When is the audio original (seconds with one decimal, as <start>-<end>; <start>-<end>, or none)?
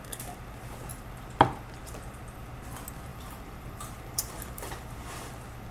0.0-3.1; 5.3-5.7